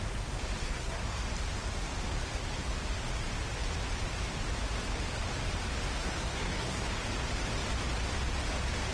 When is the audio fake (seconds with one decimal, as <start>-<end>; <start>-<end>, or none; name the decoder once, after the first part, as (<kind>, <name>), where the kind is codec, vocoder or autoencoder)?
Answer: 0.6-1.2 (codec, SNAC); 6.0-6.9